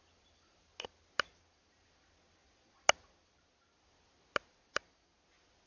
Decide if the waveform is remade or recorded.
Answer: recorded